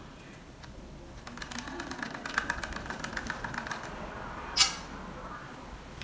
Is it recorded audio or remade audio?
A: recorded